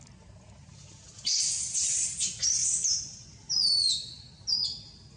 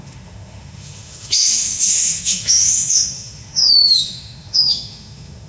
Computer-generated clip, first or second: second